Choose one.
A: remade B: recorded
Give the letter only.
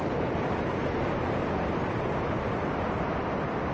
B